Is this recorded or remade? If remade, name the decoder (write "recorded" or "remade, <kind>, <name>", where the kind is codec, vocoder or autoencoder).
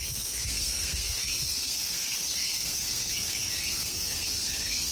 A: remade, codec, SNAC